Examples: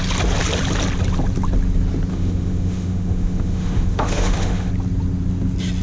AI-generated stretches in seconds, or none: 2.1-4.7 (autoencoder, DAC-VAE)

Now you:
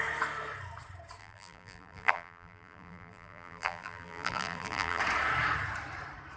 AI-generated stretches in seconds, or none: 1.2-5.0 (vocoder, BigVGAN v2)

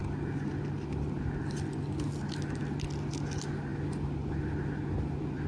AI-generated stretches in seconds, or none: none

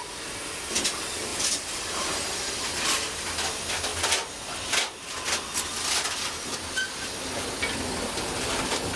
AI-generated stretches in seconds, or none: 1.3-2.1 (vocoder, BigVGAN v2)

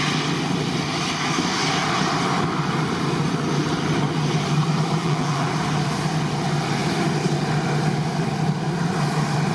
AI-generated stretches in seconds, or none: 5.0-5.5 (vocoder, BigVGAN v2)

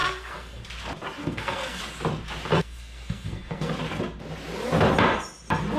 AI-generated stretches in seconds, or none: 0.0-0.7 (codec, SNAC); 1.2-1.8; 2.5-3.7